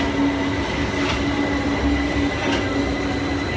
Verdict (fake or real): real